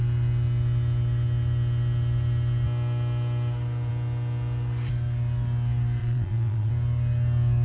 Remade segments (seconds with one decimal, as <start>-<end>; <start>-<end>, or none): 6.0-6.7